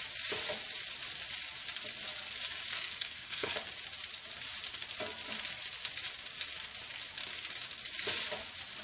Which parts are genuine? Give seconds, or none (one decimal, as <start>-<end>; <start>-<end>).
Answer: 0.0-2.7; 3.6-8.8